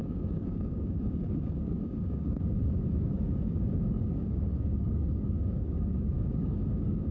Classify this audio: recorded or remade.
remade